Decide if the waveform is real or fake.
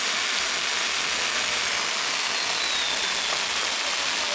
real